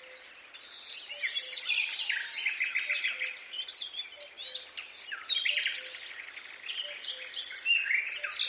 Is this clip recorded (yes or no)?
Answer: yes